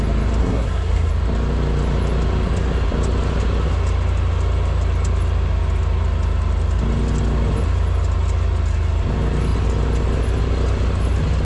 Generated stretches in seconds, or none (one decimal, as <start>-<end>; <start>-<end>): 0.4-1.1